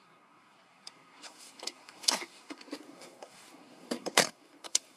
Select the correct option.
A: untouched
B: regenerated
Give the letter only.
B